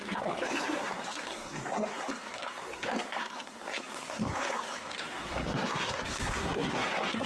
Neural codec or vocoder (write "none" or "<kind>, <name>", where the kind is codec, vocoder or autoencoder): codec, SNAC